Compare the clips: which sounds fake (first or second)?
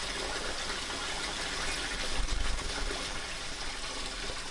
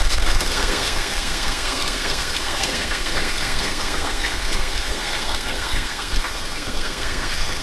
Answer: second